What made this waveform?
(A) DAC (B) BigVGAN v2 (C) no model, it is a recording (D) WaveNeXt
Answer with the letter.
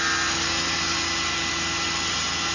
C